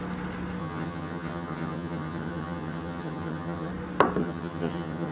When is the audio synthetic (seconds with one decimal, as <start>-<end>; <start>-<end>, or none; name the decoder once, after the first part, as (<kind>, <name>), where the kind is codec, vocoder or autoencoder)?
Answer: 0.6-3.7 (vocoder, HiFi-GAN); 4.2-5.1